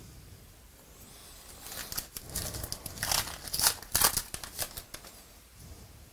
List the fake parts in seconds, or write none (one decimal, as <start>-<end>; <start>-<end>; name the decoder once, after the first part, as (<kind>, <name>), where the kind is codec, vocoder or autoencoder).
none